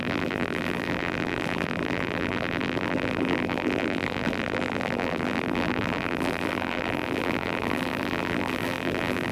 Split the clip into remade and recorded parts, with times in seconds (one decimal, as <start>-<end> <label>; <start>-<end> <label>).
0.0-9.3 remade